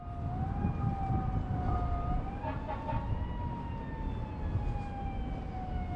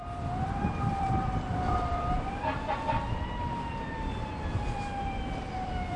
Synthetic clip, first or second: second